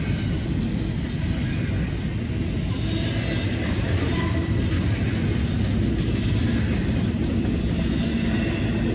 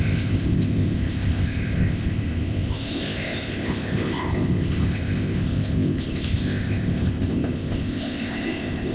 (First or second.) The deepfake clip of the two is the second